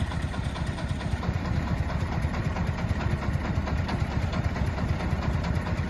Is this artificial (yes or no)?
no